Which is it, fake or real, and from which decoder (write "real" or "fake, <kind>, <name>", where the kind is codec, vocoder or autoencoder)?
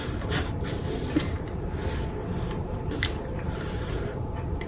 fake, vocoder, BigVGAN v2